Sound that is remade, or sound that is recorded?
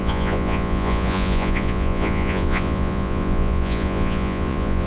remade